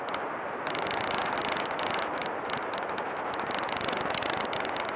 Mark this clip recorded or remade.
recorded